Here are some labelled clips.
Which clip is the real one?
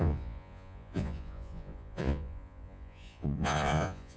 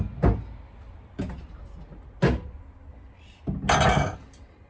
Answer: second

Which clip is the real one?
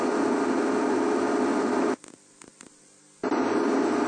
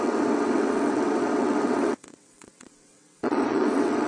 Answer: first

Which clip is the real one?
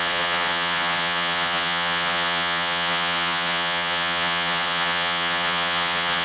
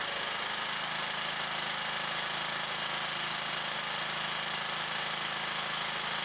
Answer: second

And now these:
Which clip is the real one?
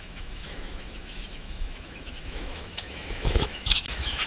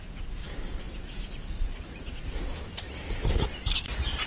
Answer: second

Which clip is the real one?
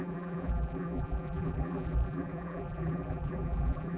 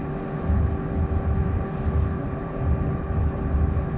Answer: second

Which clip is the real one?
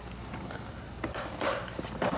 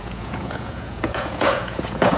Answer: first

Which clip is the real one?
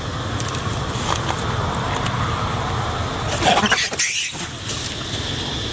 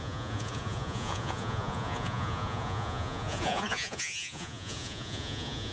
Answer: first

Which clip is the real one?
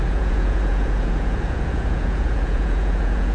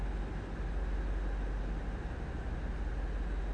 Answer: second